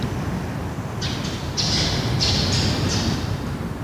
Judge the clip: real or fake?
real